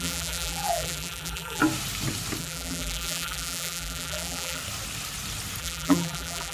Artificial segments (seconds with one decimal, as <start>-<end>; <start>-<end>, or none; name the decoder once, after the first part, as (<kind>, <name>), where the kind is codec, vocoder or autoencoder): 0.0-1.6 (vocoder, BigVGAN v2); 2.4-4.6; 5.6-6.5